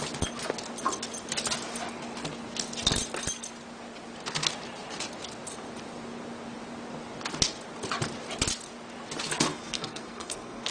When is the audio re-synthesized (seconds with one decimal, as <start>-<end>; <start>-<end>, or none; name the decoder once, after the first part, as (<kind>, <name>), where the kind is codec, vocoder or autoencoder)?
9.5-10.7 (codec, SNAC)